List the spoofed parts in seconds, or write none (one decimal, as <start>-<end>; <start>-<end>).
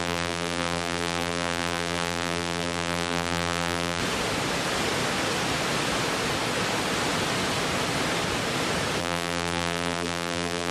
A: 0.0-4.0; 9.0-10.7